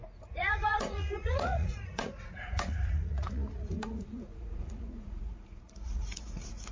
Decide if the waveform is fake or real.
fake